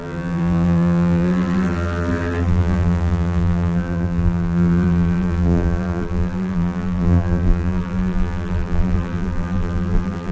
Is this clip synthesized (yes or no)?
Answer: yes